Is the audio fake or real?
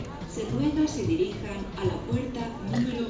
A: real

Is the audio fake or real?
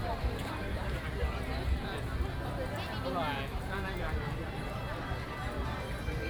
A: real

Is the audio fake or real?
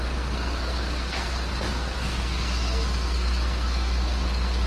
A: fake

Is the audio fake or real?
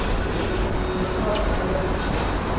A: real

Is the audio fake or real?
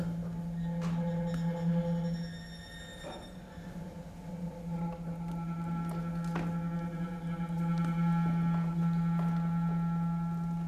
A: real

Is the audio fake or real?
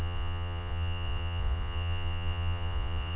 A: fake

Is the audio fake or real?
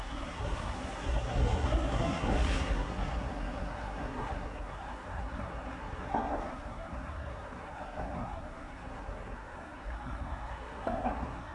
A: fake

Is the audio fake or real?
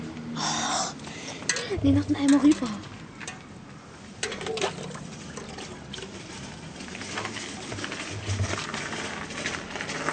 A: real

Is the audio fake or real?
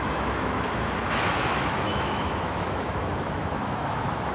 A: fake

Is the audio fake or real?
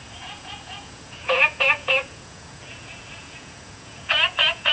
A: fake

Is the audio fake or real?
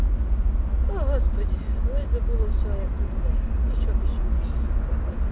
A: real